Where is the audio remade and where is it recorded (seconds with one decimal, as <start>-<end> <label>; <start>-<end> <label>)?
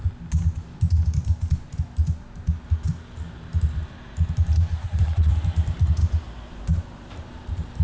0.0-4.7 recorded; 4.7-5.3 remade; 5.3-7.8 recorded